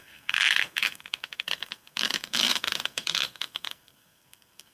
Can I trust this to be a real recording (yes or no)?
no